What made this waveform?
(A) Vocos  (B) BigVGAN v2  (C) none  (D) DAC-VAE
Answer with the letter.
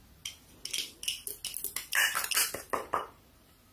C